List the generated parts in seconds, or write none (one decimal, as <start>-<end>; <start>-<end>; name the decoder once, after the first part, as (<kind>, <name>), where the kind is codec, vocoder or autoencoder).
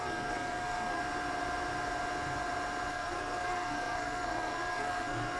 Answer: 0.0-1.0 (codec, SNAC); 2.9-5.4